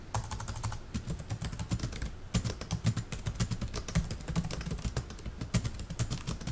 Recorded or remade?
recorded